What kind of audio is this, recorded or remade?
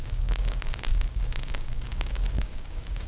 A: remade